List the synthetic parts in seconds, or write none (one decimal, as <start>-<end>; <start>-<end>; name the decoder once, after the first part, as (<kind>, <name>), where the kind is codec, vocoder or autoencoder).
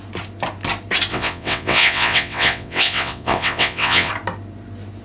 1.1-4.1 (vocoder, WaveNeXt)